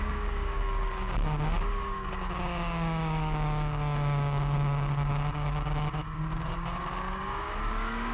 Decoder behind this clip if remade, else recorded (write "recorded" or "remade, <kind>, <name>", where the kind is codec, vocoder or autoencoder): remade, codec, DAC